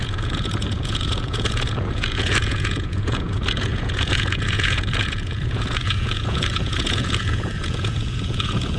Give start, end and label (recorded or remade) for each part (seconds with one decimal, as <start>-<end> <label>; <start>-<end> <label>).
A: 0.0-8.8 remade